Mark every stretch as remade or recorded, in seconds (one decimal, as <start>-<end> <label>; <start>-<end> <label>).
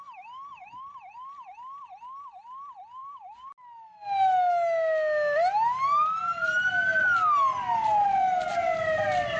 0.0-9.4 recorded